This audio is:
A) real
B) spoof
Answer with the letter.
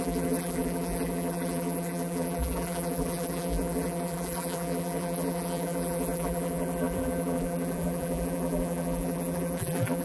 B